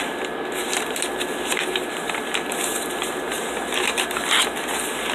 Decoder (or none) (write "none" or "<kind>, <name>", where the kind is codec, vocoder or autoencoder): none